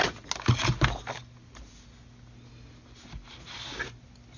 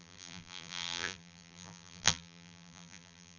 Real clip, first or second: first